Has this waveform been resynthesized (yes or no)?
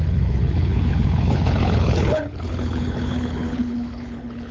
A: yes